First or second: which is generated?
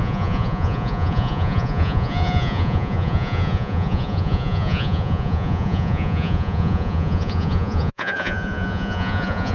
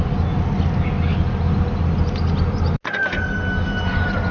first